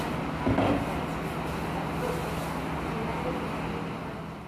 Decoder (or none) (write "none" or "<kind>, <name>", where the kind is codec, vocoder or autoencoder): none